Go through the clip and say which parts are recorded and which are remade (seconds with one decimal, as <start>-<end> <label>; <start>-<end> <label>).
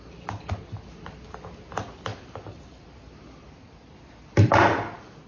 0.0-5.3 recorded